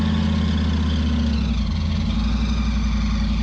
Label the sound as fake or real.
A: real